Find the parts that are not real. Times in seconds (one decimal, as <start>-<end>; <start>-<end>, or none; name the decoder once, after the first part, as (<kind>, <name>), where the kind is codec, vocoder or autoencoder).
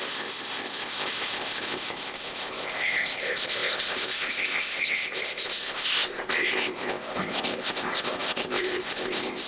0.0-9.5 (codec, ZipCodec)